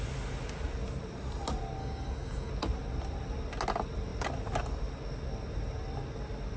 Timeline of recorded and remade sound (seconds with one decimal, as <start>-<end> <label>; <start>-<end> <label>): 0.0-1.8 recorded; 1.8-2.5 remade; 2.5-6.6 recorded